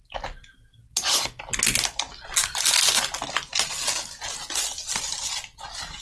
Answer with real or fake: real